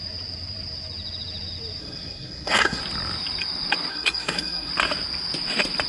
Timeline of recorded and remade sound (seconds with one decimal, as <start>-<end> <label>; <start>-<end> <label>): 0.0-1.8 recorded; 1.8-2.8 remade; 2.8-3.9 recorded; 3.9-4.7 remade; 4.7-5.9 recorded